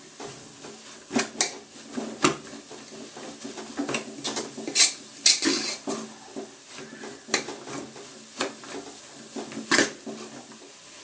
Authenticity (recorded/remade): recorded